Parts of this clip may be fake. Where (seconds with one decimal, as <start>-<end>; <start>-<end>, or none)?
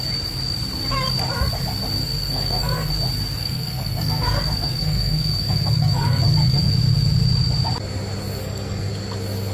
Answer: 2.0-2.9; 3.4-6.7; 8.4-8.9